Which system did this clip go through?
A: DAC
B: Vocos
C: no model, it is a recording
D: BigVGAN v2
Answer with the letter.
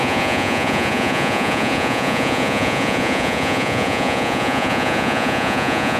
B